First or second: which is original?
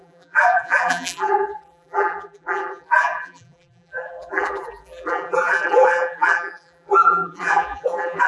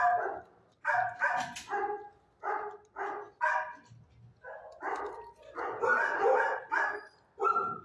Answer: second